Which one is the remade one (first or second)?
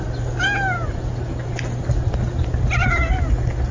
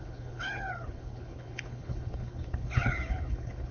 second